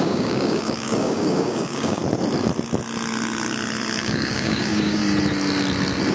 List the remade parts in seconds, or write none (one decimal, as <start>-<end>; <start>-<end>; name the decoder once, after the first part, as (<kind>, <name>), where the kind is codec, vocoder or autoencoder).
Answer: 0.0-2.0 (codec, DAC); 4.0-5.0